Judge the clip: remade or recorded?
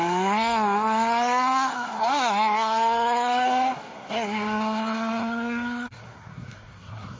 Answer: remade